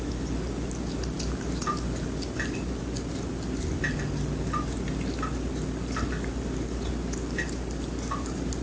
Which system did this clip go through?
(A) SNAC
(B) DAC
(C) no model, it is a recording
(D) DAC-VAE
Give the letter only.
C